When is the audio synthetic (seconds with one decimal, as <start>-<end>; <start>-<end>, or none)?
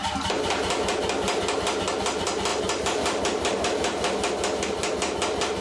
none